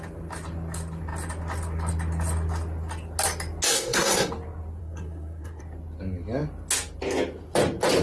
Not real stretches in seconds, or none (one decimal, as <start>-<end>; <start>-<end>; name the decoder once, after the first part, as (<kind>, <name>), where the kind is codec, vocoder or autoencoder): 3.7-4.3 (codec, SNAC); 4.8-5.6